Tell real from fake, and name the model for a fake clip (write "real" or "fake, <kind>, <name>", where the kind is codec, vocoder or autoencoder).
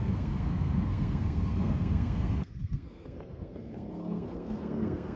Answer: fake, codec, SNAC